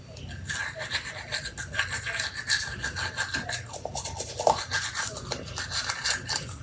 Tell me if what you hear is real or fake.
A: real